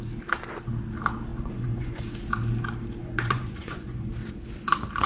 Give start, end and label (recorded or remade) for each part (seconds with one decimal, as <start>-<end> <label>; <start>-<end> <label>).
0.0-1.3 recorded; 1.3-2.0 remade; 2.0-3.0 recorded; 3.0-4.1 remade; 4.1-5.1 recorded